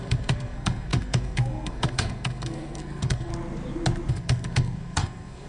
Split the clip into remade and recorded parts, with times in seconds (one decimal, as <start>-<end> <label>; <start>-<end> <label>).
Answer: 0.0-3.3 remade; 3.3-4.1 recorded; 4.1-5.5 remade